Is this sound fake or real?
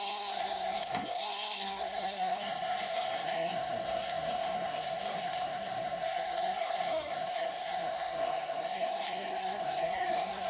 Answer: fake